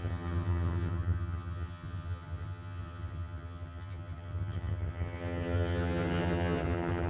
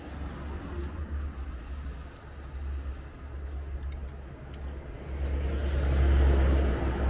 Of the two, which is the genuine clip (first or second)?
second